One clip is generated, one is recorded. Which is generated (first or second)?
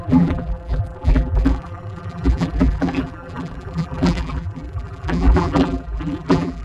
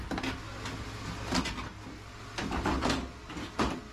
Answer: first